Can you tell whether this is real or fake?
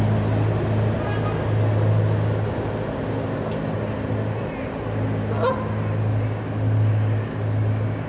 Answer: real